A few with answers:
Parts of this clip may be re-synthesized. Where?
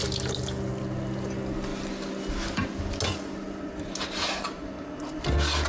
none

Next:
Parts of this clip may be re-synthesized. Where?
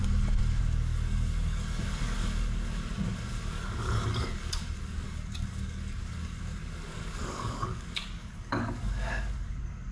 0.6-9.9 (codec, DAC)